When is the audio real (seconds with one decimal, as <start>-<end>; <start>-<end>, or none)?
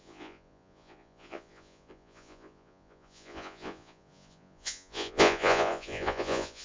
none